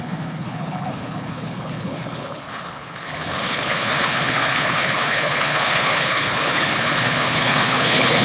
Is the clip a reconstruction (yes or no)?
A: yes